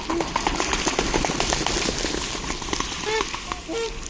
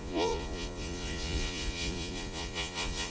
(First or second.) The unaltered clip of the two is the first